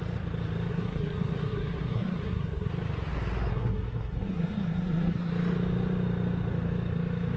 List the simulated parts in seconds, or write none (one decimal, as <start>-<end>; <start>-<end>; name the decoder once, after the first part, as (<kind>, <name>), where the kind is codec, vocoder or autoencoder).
0.7-2.7 (codec, SNAC); 3.5-5.3